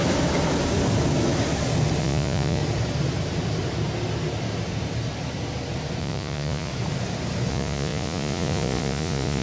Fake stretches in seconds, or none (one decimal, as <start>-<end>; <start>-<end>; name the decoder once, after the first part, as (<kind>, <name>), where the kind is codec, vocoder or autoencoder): 2.0-2.6 (vocoder, Vocos); 6.0-6.7; 7.5-9.4